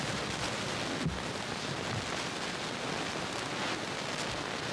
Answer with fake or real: real